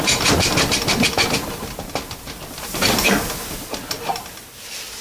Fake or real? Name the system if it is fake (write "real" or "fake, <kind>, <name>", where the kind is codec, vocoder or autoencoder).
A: real